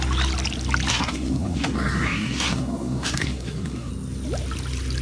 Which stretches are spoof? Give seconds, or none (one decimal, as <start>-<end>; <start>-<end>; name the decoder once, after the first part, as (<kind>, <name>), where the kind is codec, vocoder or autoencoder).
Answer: 0.9-3.9 (codec, SNAC)